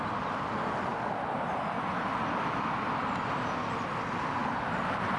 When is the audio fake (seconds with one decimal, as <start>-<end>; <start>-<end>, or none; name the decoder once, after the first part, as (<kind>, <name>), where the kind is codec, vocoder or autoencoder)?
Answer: none